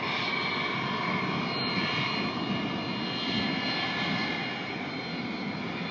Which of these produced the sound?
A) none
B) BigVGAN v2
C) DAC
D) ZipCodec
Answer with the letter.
A